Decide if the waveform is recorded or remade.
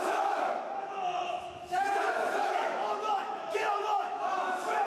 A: remade